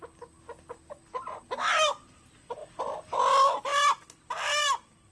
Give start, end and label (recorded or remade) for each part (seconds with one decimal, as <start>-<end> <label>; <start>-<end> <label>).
0.0-5.1 recorded